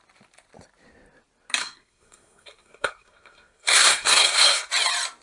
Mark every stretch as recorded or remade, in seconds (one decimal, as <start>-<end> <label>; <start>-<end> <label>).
0.0-1.6 recorded; 1.6-4.7 remade; 4.7-5.2 recorded